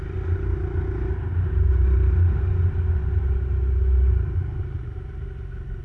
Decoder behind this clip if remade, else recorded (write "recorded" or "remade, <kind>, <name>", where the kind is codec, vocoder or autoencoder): recorded